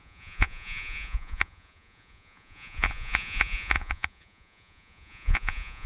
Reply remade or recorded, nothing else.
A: remade